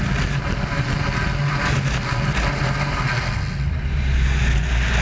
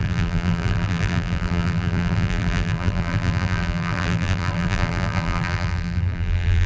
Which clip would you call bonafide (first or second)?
first